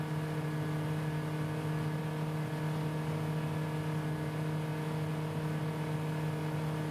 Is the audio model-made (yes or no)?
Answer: no